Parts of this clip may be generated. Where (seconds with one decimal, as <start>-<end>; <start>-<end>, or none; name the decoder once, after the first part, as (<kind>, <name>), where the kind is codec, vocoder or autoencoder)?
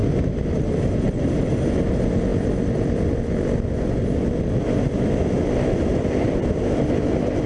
none